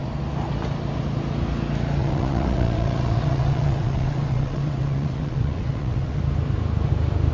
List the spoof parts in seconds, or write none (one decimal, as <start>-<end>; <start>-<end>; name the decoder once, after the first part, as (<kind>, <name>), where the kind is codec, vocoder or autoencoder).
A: 2.0-6.2 (vocoder, WaveNeXt)